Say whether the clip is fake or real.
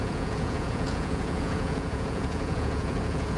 fake